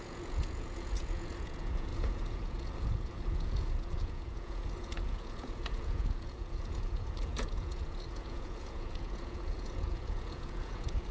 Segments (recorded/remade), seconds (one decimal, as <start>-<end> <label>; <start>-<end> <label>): 0.0-11.1 remade